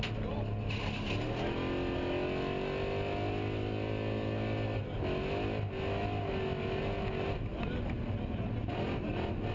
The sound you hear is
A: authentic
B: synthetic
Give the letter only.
A